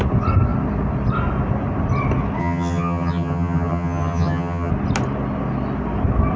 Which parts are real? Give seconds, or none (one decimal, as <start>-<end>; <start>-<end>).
0.0-2.4; 4.7-6.4